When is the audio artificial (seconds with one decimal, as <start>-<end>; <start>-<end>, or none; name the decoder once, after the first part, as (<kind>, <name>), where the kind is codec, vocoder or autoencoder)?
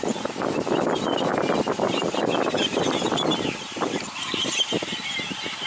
none